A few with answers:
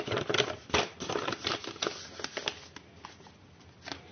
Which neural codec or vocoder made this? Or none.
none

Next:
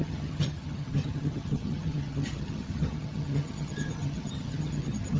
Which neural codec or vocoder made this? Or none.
vocoder, HiFi-GAN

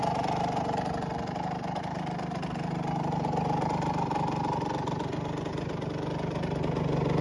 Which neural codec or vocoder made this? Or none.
none